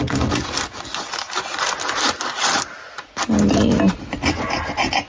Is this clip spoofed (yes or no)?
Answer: no